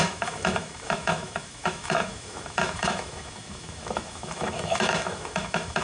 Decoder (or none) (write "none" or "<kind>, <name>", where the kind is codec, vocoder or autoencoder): autoencoder, DAC-VAE